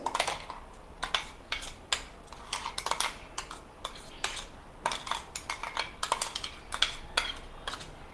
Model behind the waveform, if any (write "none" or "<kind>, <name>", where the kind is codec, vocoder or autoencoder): none